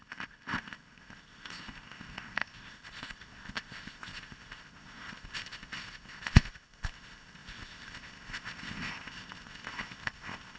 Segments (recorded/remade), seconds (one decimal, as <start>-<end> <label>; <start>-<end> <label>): 0.0-10.6 remade